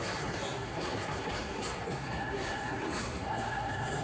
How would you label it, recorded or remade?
remade